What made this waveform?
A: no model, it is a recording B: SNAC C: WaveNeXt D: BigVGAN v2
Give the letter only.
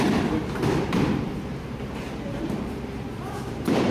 D